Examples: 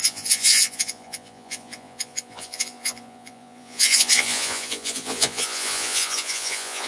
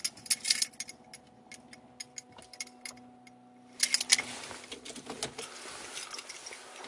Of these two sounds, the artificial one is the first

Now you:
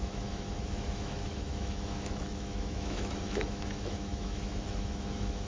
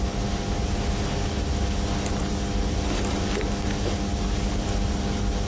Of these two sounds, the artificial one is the first